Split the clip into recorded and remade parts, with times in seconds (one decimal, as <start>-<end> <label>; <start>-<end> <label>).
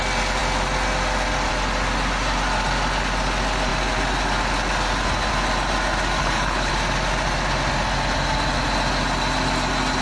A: 0.0-6.2 recorded; 6.2-6.7 remade; 6.7-10.0 recorded